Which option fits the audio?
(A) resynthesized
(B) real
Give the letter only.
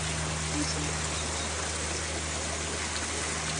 B